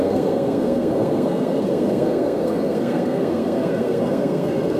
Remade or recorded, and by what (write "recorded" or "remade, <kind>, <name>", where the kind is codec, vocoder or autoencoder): remade, codec, SNAC